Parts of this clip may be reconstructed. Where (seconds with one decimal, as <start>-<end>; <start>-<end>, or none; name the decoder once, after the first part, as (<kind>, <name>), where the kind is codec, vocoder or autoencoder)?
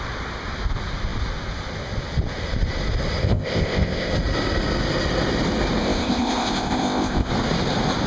3.2-4.1 (codec, ZipCodec); 5.8-7.3